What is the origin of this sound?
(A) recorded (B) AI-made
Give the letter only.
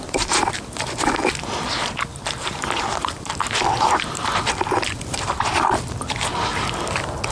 A